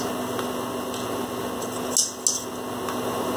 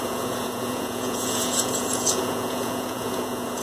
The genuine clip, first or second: first